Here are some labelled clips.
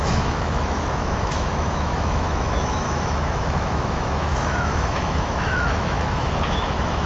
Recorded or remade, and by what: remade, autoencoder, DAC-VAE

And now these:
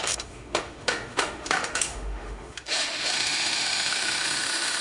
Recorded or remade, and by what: remade, autoencoder, DAC-VAE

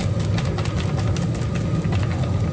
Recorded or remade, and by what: recorded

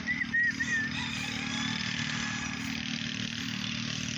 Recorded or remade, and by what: recorded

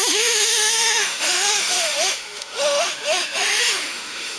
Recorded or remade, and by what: remade, autoencoder, DAC-VAE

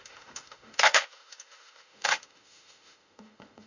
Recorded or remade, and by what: remade, autoencoder, DAC-VAE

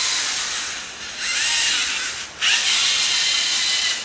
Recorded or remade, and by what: recorded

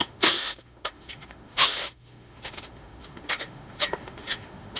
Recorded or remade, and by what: remade, autoencoder, DAC-VAE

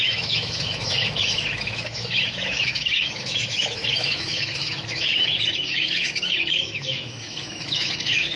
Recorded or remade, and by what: remade, autoencoder, DAC-VAE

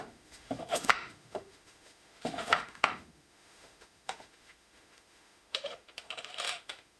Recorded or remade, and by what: remade, autoencoder, DAC-VAE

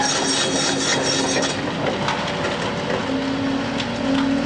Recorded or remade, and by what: recorded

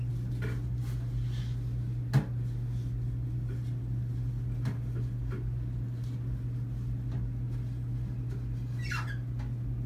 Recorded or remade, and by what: recorded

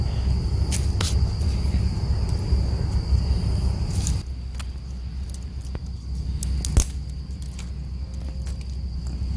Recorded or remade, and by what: recorded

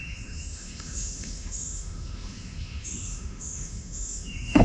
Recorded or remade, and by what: remade, autoencoder, DAC-VAE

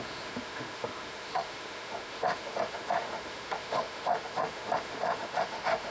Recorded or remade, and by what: remade, autoencoder, DAC-VAE